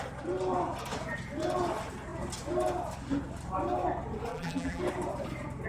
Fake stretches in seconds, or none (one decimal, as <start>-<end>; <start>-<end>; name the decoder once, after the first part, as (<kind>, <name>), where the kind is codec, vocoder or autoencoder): 4.3-4.8 (vocoder, BigVGAN v2)

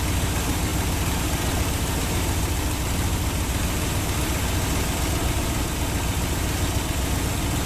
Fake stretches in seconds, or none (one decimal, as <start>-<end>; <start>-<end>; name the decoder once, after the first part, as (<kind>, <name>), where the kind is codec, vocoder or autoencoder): none

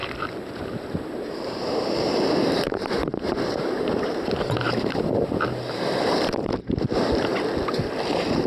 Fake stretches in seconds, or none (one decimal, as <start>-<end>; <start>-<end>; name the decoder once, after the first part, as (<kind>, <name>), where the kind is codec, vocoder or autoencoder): 1.3-7.3 (vocoder, BigVGAN v2); 7.8-8.5

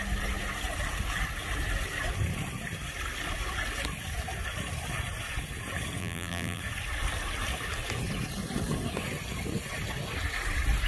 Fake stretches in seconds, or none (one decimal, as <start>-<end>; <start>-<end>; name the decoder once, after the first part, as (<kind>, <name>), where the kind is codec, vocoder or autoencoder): 6.0-6.6 (vocoder, BigVGAN v2)

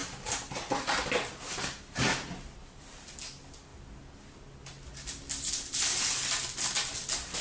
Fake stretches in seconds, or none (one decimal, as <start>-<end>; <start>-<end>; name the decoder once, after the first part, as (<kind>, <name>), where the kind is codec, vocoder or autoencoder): none

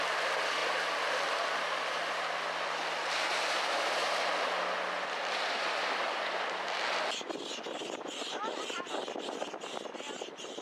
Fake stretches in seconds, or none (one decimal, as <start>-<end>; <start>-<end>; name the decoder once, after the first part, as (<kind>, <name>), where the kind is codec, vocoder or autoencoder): none

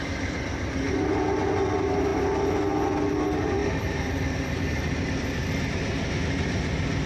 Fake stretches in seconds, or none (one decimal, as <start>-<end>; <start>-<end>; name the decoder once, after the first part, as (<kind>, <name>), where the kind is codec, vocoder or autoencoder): 3.6-5.1 (vocoder, BigVGAN v2)